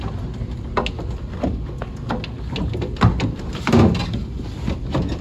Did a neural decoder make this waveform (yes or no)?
no